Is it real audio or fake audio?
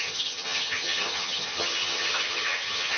fake